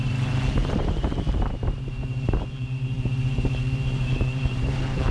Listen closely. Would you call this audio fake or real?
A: fake